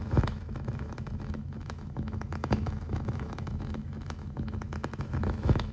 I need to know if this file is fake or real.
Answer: fake